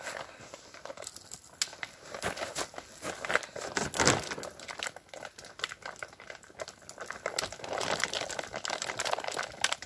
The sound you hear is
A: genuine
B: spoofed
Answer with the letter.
A